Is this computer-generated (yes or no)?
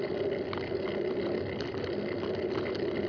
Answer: no